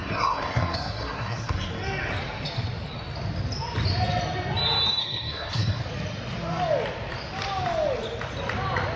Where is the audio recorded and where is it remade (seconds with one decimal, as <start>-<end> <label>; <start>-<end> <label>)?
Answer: 0.0-1.7 remade; 1.7-5.0 recorded; 5.0-5.8 remade; 5.8-9.0 recorded